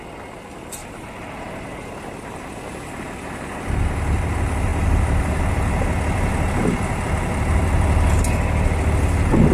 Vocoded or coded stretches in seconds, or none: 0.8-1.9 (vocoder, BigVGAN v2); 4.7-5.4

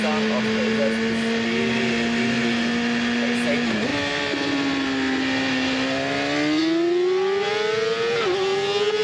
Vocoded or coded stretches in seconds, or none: none

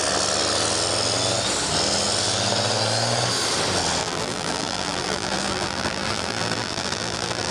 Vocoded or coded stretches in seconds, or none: 4.0-7.5 (vocoder, BigVGAN v2)

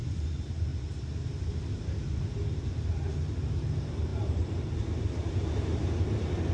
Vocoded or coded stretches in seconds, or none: 0.0-0.7 (vocoder, BigVGAN v2); 2.7-6.5

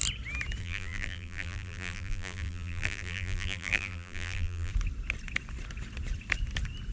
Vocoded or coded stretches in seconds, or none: 0.6-4.7 (vocoder, BigVGAN v2)